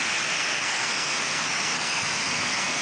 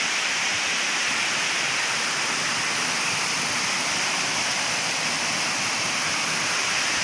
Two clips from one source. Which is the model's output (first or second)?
first